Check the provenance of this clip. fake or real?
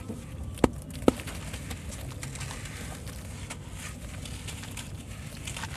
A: real